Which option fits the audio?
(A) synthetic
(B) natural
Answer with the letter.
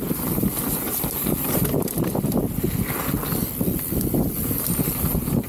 B